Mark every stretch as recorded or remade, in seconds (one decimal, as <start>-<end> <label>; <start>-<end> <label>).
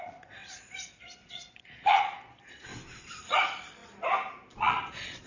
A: 0.0-2.7 remade; 2.7-3.3 recorded; 3.3-3.8 remade; 3.8-4.5 recorded; 4.5-5.3 remade